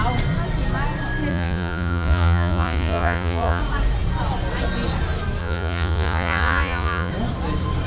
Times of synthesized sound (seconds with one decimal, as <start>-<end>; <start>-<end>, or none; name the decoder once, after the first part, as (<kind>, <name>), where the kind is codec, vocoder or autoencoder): 1.3-3.6 (vocoder, Vocos); 5.4-7.1